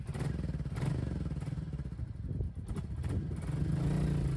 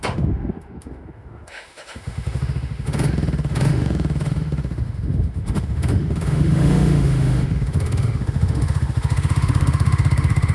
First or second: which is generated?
second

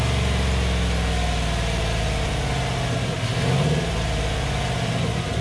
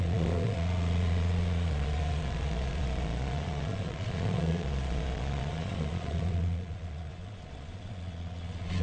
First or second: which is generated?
second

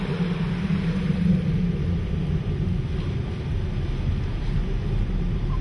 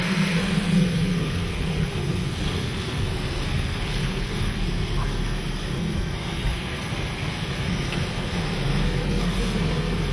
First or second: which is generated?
second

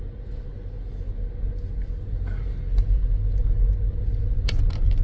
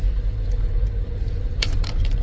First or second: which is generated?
second